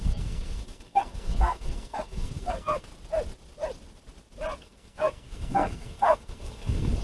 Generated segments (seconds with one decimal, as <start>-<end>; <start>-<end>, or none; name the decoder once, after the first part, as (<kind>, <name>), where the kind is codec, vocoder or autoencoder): 0.0-2.9 (codec, SNAC); 4.6-7.0